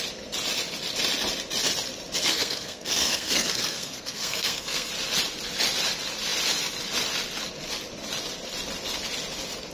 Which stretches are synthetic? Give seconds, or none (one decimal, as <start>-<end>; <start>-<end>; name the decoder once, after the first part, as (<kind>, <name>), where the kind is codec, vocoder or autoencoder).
2.2-4.9 (codec, SNAC)